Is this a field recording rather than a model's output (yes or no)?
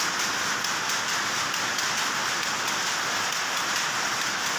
yes